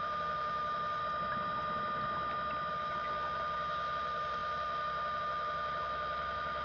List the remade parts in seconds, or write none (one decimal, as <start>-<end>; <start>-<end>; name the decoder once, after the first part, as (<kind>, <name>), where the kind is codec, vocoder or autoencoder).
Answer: 0.0-1.0 (autoencoder, DAC-VAE); 2.7-6.6